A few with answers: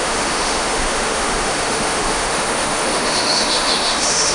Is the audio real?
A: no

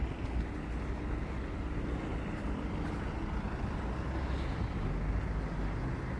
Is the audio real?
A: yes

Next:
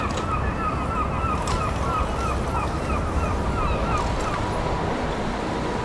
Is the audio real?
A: yes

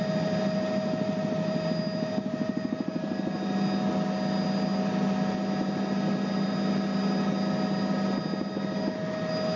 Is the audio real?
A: yes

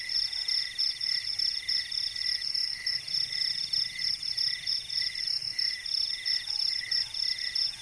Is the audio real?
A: yes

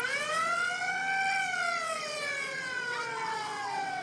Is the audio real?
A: no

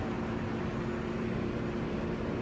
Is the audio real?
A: yes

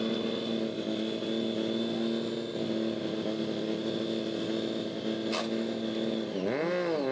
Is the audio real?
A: yes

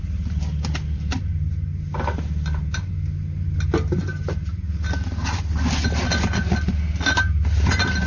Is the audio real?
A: yes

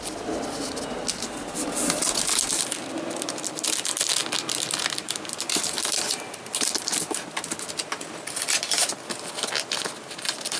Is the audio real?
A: yes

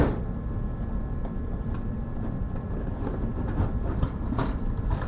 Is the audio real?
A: yes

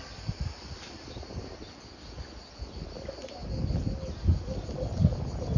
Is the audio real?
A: yes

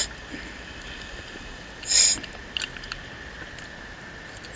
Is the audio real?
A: yes